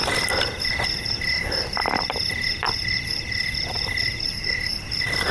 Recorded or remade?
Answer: recorded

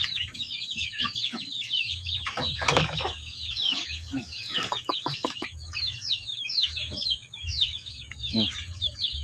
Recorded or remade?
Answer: remade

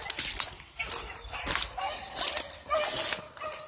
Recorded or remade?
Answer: recorded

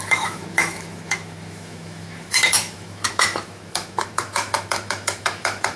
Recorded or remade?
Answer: remade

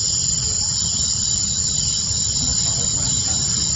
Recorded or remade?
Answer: recorded